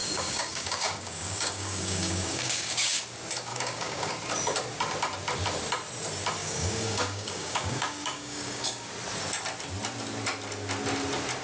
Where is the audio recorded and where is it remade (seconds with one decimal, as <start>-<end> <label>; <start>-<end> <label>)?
0.0-3.0 remade; 3.0-3.5 recorded; 3.5-4.1 remade; 4.1-6.4 recorded; 6.4-8.9 remade; 8.9-11.4 recorded